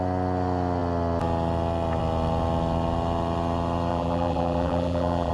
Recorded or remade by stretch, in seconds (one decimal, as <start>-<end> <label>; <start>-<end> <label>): 0.0-3.9 recorded; 3.9-5.3 remade